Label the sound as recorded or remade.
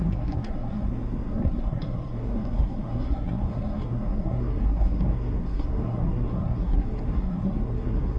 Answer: remade